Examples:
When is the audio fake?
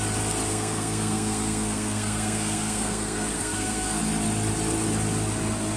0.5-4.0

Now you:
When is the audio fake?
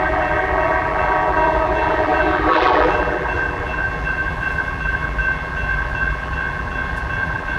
0.0-7.6